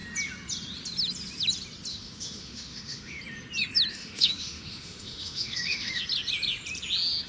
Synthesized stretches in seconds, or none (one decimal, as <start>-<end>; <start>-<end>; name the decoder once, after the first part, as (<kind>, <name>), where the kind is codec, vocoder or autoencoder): 1.9-3.2 (autoencoder, DAC-VAE); 3.9-6.0